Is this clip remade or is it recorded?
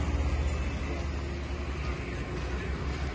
recorded